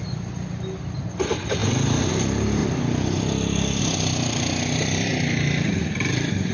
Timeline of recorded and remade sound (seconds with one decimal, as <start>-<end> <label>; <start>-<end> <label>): 0.0-1.6 remade; 1.6-2.1 recorded; 2.1-5.1 remade; 5.1-5.7 recorded; 5.7-6.5 remade